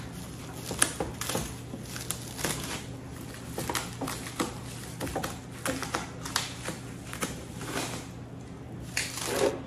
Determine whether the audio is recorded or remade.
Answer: recorded